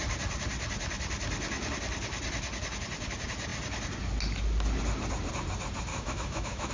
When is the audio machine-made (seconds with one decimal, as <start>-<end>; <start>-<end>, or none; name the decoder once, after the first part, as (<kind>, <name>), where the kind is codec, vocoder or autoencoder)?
5.9-6.7 (autoencoder, DAC-VAE)

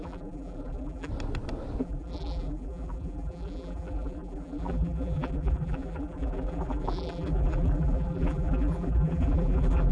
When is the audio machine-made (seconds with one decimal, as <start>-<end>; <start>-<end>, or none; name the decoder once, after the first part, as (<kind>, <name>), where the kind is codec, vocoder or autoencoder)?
0.0-1.1 (vocoder, BigVGAN v2); 1.8-9.9

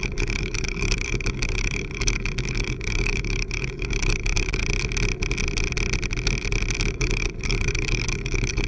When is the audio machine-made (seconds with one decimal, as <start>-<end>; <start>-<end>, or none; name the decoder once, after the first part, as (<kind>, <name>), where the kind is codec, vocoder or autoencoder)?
0.0-4.6 (codec, DAC); 6.9-8.7

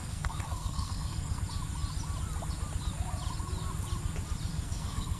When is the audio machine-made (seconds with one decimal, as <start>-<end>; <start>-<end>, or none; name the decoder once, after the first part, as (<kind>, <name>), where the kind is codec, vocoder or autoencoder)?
0.0-1.4 (codec, SNAC); 4.5-5.2

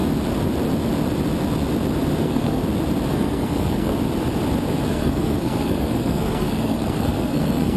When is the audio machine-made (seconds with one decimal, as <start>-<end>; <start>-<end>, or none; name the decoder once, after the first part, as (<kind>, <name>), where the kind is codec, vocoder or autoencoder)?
2.2-2.6 (codec, SNAC); 3.1-3.9; 4.9-7.8

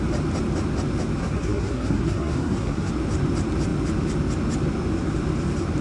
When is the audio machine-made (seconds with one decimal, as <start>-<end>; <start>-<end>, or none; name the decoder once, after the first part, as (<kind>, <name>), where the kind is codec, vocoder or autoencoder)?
1.2-2.9 (codec, SNAC)

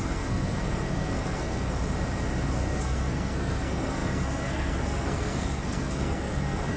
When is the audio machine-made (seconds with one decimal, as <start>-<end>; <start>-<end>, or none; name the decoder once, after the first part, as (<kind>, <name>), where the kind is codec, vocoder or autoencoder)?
0.0-1.8 (codec, SNAC); 2.5-6.8

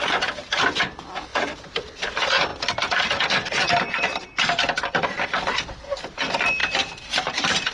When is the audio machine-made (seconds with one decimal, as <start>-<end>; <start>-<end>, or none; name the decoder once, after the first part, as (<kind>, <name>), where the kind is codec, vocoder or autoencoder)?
1.3-2.0 (vocoder, BigVGAN v2); 2.5-5.8; 6.6-7.7